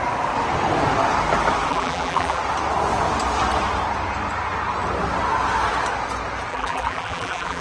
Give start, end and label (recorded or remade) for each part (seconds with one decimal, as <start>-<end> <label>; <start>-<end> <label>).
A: 0.0-1.7 recorded; 1.7-2.4 remade; 2.4-6.5 recorded; 6.5-7.6 remade